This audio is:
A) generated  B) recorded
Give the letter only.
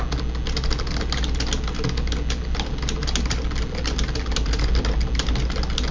B